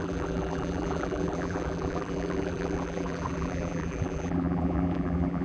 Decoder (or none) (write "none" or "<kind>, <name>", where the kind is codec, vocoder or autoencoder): vocoder, BigVGAN v2